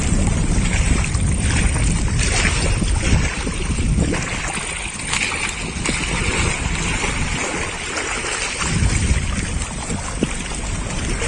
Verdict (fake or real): real